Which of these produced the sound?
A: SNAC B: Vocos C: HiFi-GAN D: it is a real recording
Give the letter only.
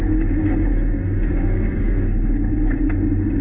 D